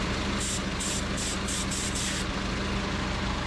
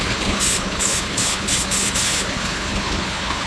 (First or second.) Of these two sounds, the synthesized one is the second